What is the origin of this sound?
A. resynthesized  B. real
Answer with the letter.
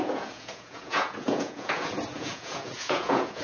A